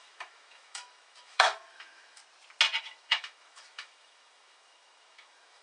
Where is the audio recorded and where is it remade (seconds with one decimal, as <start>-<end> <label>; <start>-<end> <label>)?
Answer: 0.0-2.2 remade; 2.2-2.8 recorded; 2.8-5.6 remade